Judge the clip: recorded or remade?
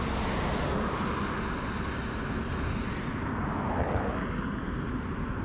recorded